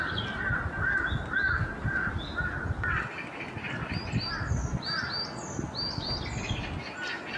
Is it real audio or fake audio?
real